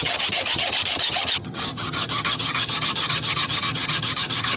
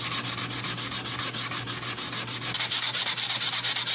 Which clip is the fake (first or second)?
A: first